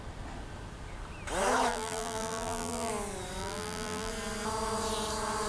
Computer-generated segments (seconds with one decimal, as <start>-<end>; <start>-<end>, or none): 1.7-2.9; 3.4-4.1